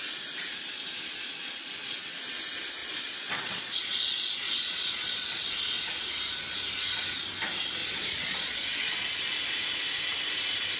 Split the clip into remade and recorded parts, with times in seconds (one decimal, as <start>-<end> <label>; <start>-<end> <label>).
0.0-2.8 recorded; 2.8-6.1 remade; 6.1-7.8 recorded; 7.8-9.6 remade; 9.6-10.8 recorded